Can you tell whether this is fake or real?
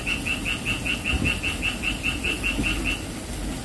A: real